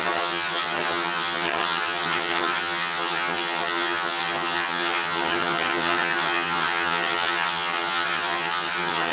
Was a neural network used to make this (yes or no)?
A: yes